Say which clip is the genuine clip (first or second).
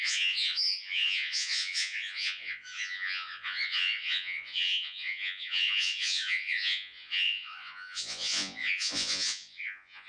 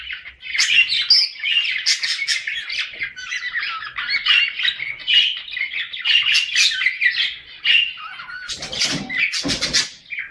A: second